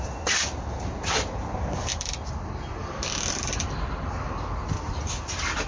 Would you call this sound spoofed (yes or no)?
yes